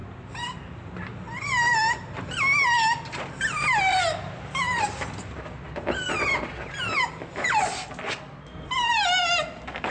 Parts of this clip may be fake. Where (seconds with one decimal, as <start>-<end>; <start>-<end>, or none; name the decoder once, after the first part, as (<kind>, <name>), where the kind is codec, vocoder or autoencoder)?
none